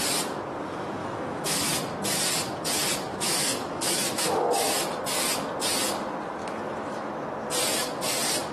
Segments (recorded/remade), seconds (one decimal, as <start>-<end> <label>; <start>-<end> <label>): 0.0-1.0 recorded; 1.0-1.6 remade; 1.6-3.1 recorded; 3.1-4.8 remade; 4.8-6.4 recorded; 6.4-7.1 remade; 7.1-8.5 recorded